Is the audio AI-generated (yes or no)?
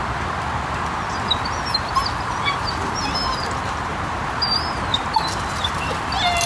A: no